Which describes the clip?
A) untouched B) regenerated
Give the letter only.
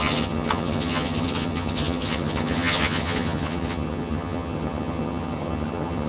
B